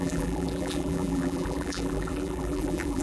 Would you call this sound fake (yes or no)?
yes